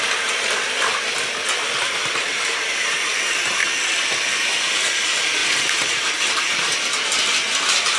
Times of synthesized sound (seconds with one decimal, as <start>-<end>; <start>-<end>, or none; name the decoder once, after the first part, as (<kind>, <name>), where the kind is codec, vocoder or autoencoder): 5.4-6.7 (vocoder, BigVGAN v2)

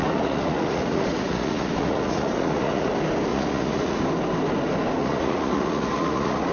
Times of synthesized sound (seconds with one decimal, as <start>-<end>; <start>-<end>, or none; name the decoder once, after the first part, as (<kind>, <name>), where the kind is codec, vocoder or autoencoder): 0.0-2.9 (vocoder, Vocos); 3.3-4.0; 5.0-6.5